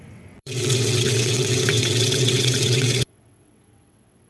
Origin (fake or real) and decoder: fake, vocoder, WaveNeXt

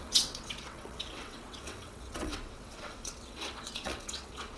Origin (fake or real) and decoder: fake, vocoder, WaveNeXt